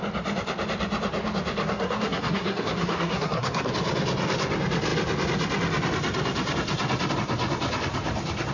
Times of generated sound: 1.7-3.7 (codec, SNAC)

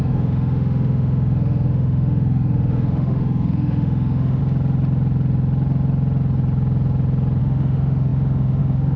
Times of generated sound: 0.0-4.4 (autoencoder, DAC-VAE); 7.4-9.0

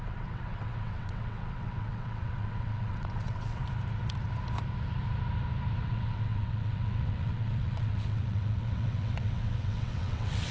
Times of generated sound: 0.0-3.6 (vocoder, WaveNeXt); 5.8-10.5